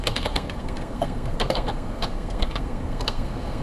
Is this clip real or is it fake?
fake